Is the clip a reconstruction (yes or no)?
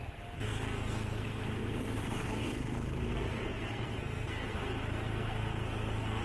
yes